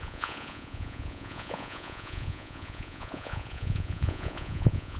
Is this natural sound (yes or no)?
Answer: no